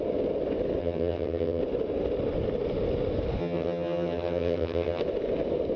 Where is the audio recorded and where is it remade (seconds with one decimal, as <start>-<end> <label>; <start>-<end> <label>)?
0.0-0.8 recorded; 0.8-1.6 remade; 1.6-3.4 recorded; 3.4-5.0 remade; 5.0-5.8 recorded